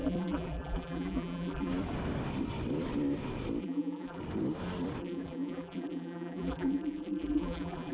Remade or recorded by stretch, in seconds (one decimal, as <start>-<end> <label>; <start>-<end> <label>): 0.0-1.7 remade; 1.7-3.6 recorded; 3.6-4.2 remade; 4.2-5.0 recorded; 5.0-7.9 remade